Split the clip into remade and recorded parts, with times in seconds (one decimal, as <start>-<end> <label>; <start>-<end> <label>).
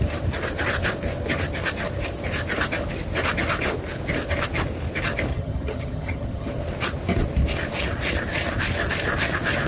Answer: 0.0-5.3 recorded; 5.3-6.5 remade; 6.5-9.7 recorded